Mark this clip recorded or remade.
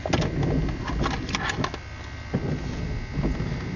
recorded